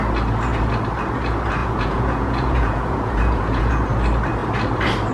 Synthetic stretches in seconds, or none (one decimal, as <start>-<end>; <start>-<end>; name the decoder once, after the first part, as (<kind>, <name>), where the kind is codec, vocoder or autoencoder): 1.6-3.7 (vocoder, Vocos)